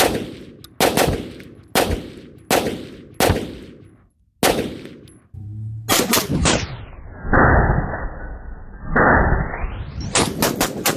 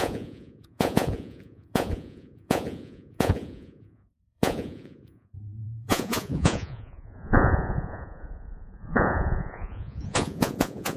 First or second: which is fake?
second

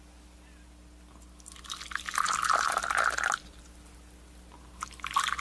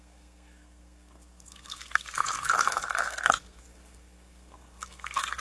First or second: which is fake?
second